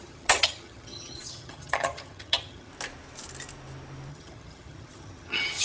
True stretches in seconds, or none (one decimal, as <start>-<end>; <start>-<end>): 2.7-4.1